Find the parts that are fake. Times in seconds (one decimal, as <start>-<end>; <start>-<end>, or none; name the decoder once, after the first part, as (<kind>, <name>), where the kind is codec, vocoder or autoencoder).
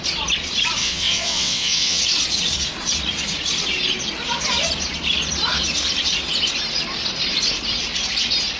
0.8-2.0 (vocoder, WaveNeXt)